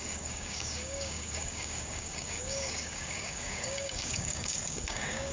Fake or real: fake